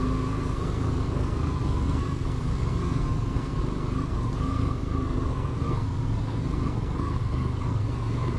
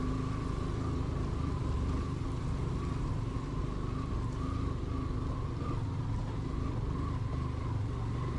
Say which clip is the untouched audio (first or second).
second